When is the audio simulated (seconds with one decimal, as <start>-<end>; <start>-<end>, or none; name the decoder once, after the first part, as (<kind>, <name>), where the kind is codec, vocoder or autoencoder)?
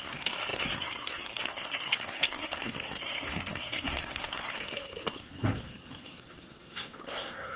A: 0.0-7.6 (codec, SNAC)